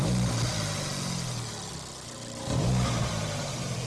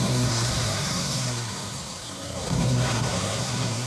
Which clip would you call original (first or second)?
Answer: first